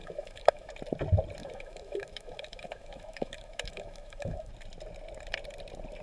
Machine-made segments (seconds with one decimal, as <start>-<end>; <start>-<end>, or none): 0.0-0.7; 1.4-4.5